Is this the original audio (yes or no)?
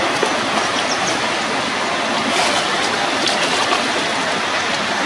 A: yes